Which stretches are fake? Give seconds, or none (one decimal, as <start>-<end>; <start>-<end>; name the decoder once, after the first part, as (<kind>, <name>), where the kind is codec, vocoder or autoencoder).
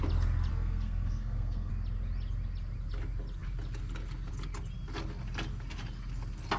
0.5-1.7 (codec, SNAC)